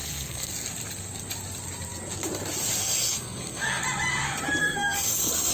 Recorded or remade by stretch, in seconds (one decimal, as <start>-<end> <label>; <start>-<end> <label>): 0.0-0.5 remade; 0.5-2.8 recorded; 2.8-3.8 remade; 3.8-4.6 recorded; 4.6-5.5 remade

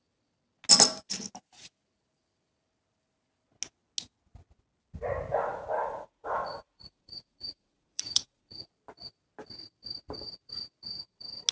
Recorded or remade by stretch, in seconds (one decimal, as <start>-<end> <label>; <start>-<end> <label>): 0.0-5.3 recorded; 5.3-8.7 remade; 8.7-11.5 recorded